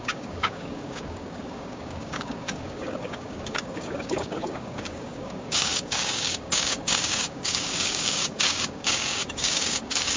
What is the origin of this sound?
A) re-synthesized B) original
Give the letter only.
A